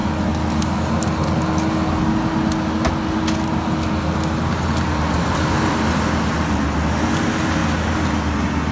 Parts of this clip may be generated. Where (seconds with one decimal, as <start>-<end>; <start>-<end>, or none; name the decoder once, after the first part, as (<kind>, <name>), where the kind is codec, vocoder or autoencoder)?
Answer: none